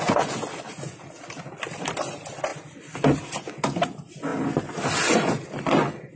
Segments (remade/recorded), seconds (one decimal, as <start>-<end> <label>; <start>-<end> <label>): 0.0-2.5 recorded; 2.5-3.2 remade; 3.2-4.3 recorded; 4.3-5.4 remade; 5.4-6.2 recorded

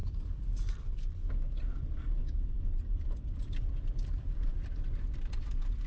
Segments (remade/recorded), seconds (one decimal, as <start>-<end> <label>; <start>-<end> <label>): 0.0-1.8 recorded; 1.8-5.9 remade

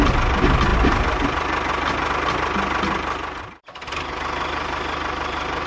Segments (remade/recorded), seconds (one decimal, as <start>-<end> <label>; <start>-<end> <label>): 0.0-5.7 recorded

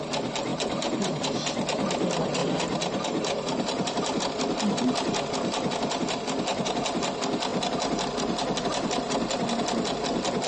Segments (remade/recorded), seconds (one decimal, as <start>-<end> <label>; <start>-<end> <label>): 0.0-0.5 recorded; 0.5-1.2 remade; 1.2-2.4 recorded; 2.4-4.2 remade; 4.2-10.5 recorded

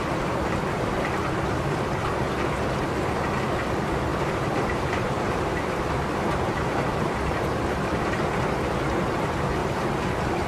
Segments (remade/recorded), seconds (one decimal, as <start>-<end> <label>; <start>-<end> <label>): 0.0-4.1 recorded; 4.1-7.3 remade; 7.3-9.6 recorded; 9.6-10.5 remade